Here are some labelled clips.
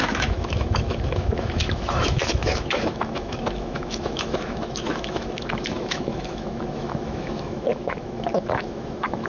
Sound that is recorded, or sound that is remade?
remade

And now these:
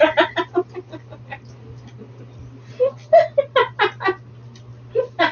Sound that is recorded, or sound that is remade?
recorded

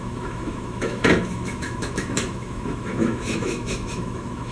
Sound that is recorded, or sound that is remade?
remade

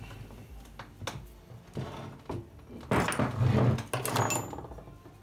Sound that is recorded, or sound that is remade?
recorded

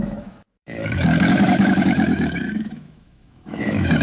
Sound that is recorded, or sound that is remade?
remade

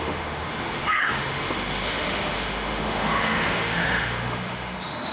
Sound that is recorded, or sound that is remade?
remade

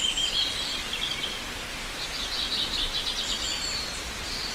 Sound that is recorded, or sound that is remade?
recorded